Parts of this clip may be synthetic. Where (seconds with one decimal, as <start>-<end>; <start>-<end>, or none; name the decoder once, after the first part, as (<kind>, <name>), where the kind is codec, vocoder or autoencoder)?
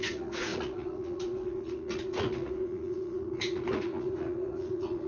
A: 0.0-5.1 (vocoder, Vocos)